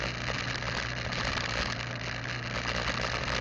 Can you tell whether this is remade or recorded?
recorded